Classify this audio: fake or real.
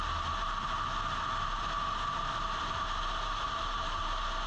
real